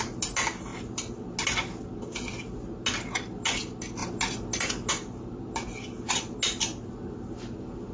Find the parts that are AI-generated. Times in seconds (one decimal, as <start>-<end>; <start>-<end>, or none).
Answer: none